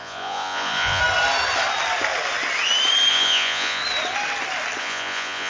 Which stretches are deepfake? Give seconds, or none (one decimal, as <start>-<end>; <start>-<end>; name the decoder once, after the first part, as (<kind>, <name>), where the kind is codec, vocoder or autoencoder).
0.0-1.0 (vocoder, Vocos); 3.1-3.8; 4.8-5.5